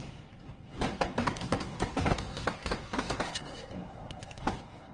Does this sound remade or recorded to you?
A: remade